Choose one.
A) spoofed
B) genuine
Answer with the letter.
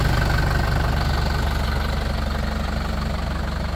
B